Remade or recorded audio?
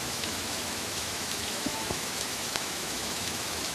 remade